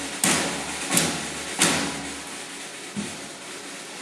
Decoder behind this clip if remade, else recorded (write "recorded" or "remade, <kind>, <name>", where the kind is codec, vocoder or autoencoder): recorded